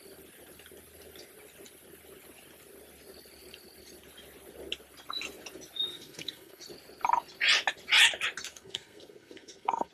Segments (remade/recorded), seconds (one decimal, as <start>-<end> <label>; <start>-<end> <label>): 0.0-5.9 recorded; 5.9-6.6 remade; 6.6-8.5 recorded; 8.5-9.9 remade